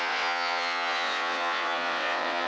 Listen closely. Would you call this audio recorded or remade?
remade